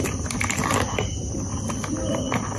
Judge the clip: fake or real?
real